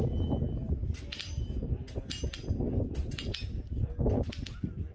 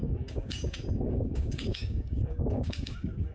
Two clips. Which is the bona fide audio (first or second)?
first